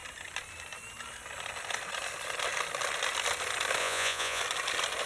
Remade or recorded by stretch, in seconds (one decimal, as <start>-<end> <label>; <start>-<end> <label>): 0.0-3.8 recorded; 3.8-4.4 remade; 4.4-5.1 recorded